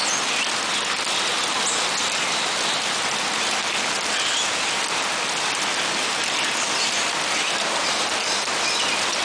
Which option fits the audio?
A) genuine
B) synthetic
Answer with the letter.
A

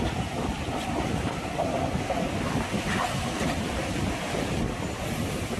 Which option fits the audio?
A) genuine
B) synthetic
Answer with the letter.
A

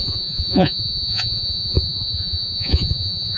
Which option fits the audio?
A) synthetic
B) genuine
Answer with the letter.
A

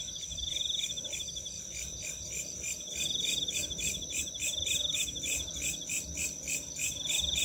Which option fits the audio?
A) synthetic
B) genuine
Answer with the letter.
A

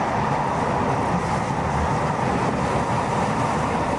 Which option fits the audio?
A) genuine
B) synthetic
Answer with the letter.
A